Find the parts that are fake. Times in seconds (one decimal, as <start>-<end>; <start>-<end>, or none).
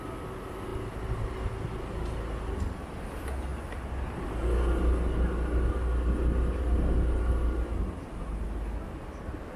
none